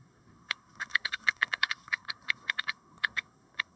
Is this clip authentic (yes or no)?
no